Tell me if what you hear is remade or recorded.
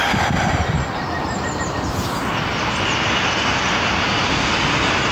recorded